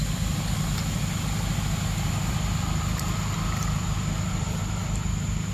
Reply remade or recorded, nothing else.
recorded